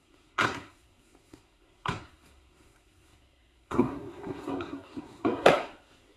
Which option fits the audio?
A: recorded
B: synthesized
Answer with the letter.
B